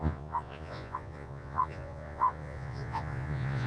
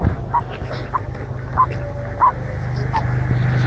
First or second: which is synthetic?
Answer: first